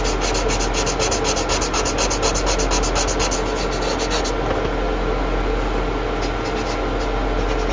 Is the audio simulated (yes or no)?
no